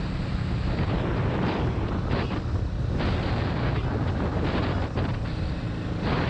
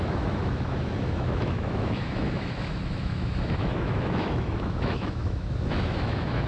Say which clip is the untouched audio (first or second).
first